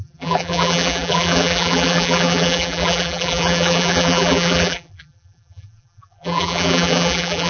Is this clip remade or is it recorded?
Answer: remade